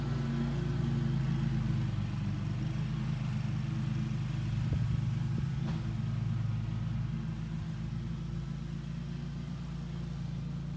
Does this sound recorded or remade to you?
recorded